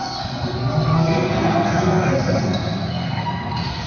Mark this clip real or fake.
fake